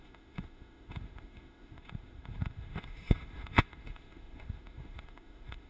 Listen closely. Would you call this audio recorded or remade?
remade